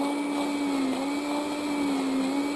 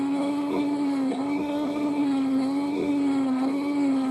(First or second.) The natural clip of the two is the first